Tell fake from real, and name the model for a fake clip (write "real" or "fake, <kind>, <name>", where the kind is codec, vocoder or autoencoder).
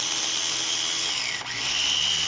real